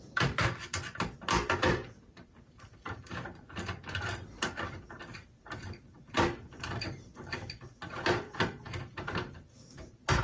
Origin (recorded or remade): remade